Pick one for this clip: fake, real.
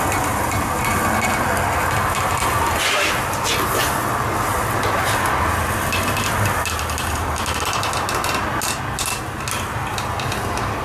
real